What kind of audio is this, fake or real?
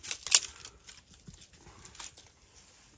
real